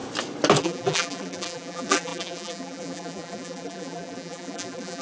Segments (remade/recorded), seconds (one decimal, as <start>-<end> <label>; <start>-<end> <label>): 0.0-0.6 recorded; 0.6-5.0 remade